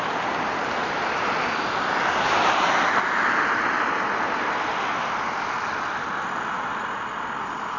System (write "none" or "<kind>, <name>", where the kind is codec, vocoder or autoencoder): none